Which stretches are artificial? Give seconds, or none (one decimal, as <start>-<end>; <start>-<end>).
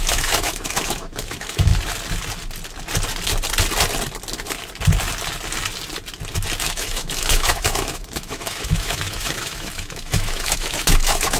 0.0-1.7; 6.6-11.4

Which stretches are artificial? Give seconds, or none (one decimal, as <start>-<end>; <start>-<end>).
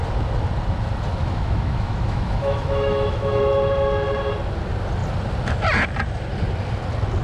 1.2-3.4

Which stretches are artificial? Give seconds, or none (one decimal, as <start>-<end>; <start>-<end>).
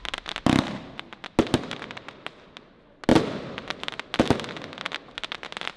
none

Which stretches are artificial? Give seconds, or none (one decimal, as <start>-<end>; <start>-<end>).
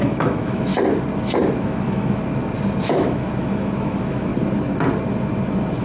0.0-0.7; 1.6-2.2; 2.8-4.3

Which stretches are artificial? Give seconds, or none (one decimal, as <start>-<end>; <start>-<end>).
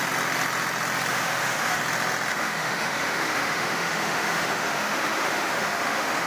1.1-1.8; 2.3-6.3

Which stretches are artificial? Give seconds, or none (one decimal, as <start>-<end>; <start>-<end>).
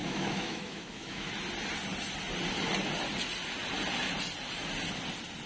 0.0-1.3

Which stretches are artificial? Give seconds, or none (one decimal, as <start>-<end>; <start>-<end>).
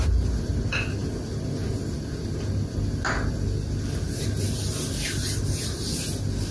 none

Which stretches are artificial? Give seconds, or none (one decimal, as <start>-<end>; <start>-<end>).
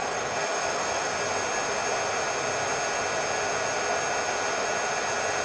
0.0-1.1